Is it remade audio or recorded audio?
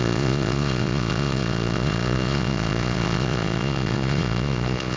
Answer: remade